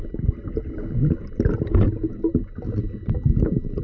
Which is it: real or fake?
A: real